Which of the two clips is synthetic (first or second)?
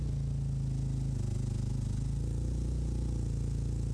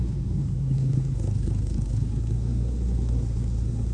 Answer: second